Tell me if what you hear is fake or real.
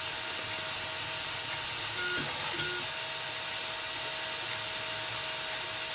real